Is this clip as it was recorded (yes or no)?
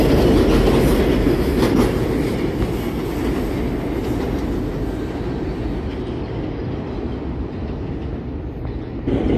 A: yes